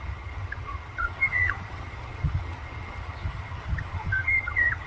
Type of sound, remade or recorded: remade